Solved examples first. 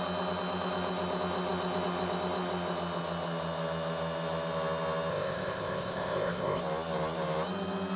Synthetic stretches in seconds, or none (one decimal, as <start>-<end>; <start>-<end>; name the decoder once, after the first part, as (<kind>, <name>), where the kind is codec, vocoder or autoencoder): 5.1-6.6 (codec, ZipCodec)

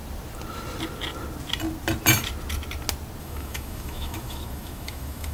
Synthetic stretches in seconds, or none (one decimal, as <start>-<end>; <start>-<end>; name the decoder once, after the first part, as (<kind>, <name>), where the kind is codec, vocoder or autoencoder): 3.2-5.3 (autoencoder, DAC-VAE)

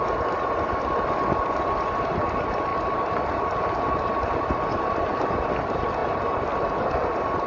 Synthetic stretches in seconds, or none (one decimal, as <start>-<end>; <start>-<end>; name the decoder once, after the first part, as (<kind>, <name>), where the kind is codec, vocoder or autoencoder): none

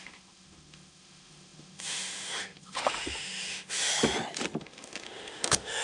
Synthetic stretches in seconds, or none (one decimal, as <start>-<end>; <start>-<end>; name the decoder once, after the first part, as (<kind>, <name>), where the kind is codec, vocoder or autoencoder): 0.0-3.9 (autoencoder, DAC-VAE); 4.6-5.8